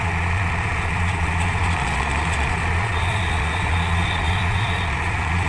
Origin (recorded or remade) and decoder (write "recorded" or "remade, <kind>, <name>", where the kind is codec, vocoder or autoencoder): remade, vocoder, Vocos